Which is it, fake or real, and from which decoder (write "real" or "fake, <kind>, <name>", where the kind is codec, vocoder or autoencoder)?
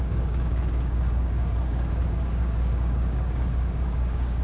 fake, codec, DAC